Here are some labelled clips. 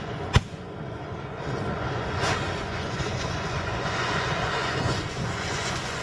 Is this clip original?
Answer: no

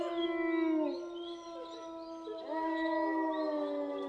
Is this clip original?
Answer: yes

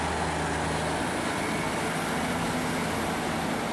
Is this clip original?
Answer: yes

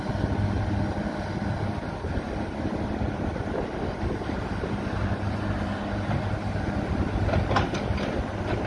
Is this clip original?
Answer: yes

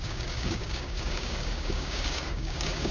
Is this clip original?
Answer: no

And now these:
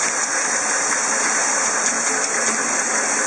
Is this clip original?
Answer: yes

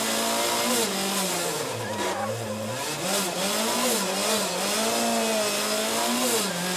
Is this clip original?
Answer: yes